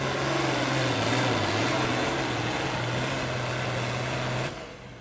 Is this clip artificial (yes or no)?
no